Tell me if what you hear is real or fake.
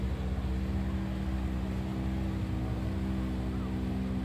real